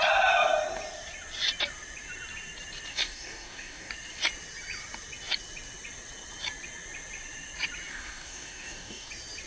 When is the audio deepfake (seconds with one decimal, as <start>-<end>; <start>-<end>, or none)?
2.9-3.9; 7.9-9.1